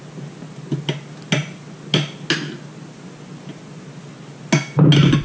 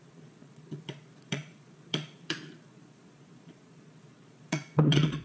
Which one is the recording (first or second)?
first